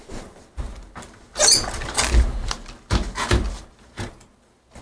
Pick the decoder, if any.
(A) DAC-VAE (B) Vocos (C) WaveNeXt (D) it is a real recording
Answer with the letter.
D